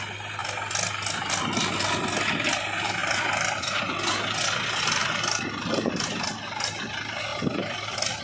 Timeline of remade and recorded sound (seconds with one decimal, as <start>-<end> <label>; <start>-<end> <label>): 0.0-3.0 recorded; 3.0-3.8 remade; 3.8-5.0 recorded; 5.0-5.9 remade; 5.9-7.3 recorded; 7.3-8.2 remade